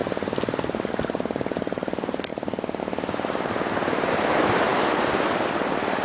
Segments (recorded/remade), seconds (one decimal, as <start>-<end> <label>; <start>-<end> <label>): 0.0-2.3 recorded; 2.3-2.8 remade; 2.8-6.0 recorded